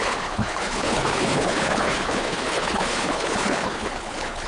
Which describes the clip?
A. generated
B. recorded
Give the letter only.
A